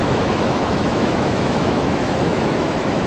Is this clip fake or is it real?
fake